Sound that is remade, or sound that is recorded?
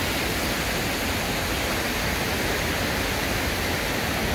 recorded